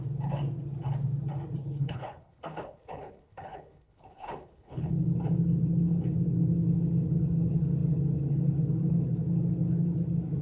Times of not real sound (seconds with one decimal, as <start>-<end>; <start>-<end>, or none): 1.6-4.9